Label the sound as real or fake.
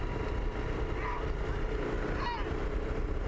real